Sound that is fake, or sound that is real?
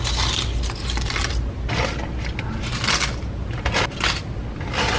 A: real